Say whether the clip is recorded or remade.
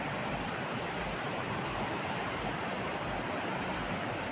recorded